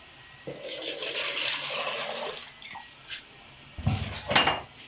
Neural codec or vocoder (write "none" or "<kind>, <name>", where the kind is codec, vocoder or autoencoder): none